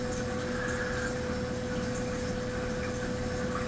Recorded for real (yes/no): yes